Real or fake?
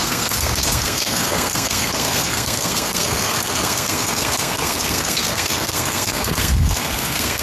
fake